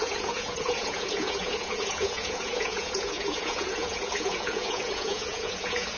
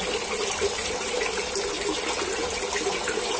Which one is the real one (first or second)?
second